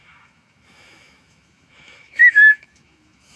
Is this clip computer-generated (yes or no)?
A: yes